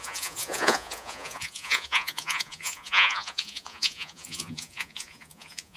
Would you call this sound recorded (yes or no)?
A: no